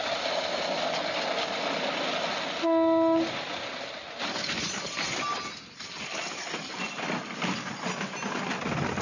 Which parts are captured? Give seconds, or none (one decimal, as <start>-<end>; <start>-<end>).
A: 0.0-9.0